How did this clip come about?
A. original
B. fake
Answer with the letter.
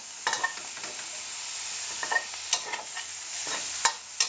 A